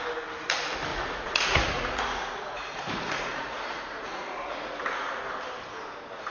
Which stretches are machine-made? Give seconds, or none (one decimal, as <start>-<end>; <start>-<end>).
0.9-4.7